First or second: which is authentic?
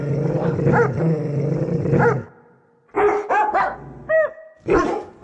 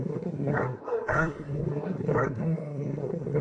first